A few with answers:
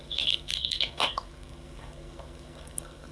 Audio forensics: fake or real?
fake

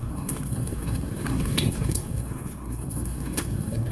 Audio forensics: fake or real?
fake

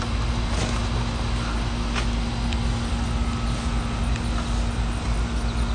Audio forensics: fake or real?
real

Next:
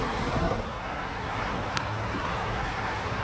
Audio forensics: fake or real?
fake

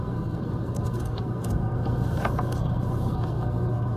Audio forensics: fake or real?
fake